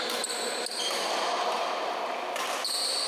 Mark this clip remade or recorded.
recorded